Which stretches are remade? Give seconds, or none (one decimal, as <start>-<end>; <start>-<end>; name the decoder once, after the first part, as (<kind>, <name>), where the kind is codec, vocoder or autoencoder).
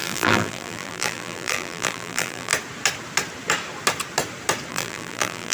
0.0-2.5 (vocoder, BigVGAN v2); 4.7-5.5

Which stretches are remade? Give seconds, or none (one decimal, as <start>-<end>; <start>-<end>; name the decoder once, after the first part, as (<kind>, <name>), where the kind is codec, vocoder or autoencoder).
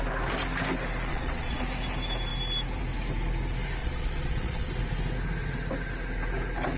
1.1-1.6 (vocoder, Vocos); 3.8-4.7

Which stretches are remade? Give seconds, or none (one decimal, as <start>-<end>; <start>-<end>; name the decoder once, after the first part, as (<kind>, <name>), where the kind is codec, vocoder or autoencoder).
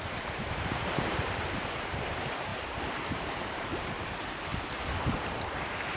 0.0-4.5 (vocoder, BigVGAN v2); 5.1-6.0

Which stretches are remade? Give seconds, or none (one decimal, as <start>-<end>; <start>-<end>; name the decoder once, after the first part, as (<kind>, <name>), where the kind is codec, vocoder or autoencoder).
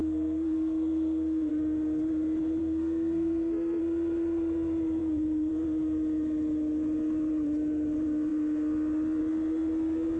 0.0-1.5 (codec, SNAC); 2.6-3.8; 5.0-5.5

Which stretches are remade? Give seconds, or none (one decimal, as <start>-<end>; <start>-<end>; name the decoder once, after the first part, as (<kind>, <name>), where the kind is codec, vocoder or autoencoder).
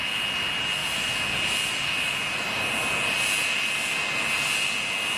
none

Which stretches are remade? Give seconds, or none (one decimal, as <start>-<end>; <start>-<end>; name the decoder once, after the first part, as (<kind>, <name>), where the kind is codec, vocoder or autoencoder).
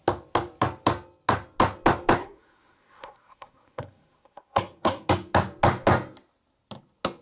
2.2-5.1 (codec, SNAC)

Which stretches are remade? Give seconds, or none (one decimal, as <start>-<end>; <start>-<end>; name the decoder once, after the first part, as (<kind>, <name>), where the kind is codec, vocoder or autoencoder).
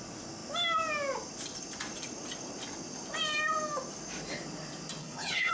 5.0-5.5 (codec, HILCodec)